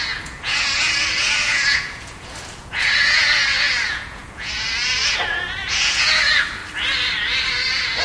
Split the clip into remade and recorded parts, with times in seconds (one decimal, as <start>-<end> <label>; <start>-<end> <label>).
0.0-6.6 remade; 6.6-7.5 recorded; 7.5-8.0 remade